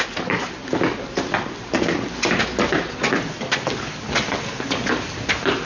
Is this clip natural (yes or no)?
yes